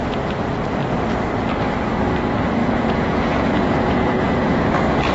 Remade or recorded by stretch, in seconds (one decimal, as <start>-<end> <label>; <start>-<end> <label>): 0.0-2.6 recorded; 2.6-4.6 remade; 4.6-5.1 recorded